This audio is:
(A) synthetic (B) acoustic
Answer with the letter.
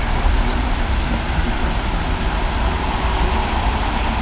B